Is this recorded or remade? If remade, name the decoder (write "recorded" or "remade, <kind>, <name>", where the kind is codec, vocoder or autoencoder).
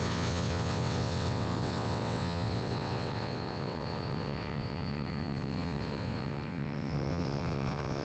remade, vocoder, WaveNeXt